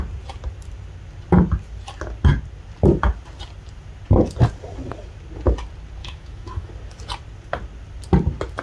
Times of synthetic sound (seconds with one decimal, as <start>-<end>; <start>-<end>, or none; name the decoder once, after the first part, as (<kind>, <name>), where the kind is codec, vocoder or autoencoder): 6.0-6.7 (autoencoder, DAC-VAE)